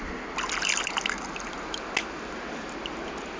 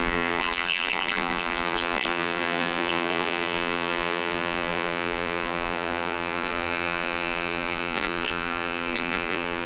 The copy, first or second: second